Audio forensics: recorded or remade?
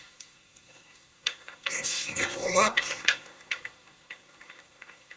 remade